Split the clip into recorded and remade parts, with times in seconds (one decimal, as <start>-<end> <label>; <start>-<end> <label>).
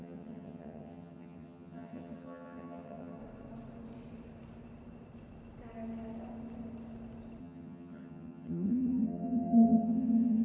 0.0-3.2 remade; 3.2-7.4 recorded; 7.4-10.4 remade